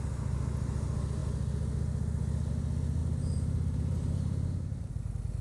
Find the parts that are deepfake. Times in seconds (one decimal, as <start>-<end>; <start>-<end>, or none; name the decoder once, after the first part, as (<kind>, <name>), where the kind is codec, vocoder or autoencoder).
3.0-4.9 (vocoder, BigVGAN v2)